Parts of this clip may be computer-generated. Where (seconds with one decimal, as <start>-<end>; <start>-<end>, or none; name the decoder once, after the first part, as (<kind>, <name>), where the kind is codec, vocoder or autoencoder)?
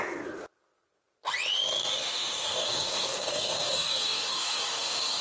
1.8-5.2 (codec, DAC)